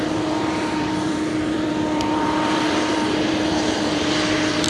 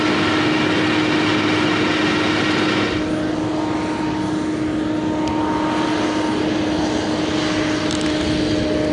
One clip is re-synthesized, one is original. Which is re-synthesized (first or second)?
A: first